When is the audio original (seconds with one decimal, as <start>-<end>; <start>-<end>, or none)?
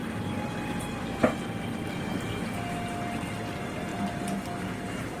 0.7-1.2; 2.3-5.2